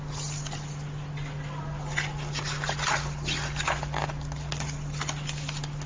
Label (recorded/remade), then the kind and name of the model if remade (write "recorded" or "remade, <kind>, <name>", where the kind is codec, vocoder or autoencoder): recorded